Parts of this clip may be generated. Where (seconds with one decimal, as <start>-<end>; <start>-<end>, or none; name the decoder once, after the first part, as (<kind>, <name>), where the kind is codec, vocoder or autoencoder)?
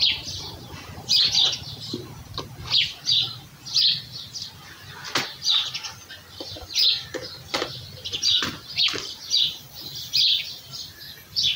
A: none